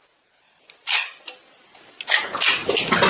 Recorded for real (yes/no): yes